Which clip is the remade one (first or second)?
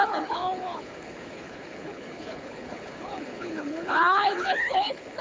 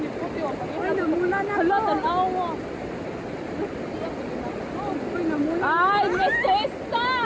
first